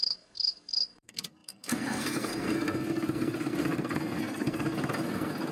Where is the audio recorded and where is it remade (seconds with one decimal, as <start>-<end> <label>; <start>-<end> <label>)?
0.0-5.5 remade